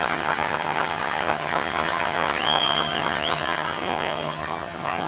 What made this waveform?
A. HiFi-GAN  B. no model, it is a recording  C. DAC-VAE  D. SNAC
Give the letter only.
A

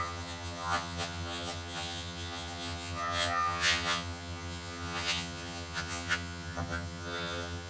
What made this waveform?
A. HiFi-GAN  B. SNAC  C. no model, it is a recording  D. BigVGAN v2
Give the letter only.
A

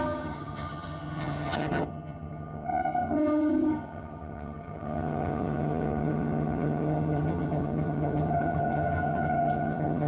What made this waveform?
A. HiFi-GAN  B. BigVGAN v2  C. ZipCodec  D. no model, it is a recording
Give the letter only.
A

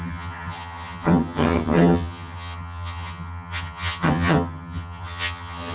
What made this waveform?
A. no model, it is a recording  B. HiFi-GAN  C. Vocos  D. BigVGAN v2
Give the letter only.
B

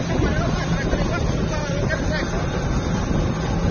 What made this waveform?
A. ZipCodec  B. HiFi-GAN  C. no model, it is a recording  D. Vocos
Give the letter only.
C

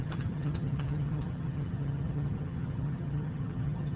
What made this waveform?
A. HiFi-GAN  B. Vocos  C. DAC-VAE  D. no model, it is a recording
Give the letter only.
A